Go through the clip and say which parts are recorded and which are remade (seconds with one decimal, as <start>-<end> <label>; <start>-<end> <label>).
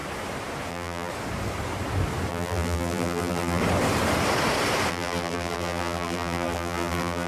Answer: 0.0-0.7 recorded; 0.7-1.1 remade; 1.1-2.3 recorded; 2.3-3.6 remade; 3.6-4.9 recorded; 4.9-7.3 remade